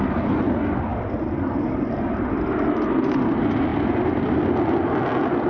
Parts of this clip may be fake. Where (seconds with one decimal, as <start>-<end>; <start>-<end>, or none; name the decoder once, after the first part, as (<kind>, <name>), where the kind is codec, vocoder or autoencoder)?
none